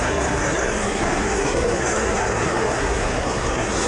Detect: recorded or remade remade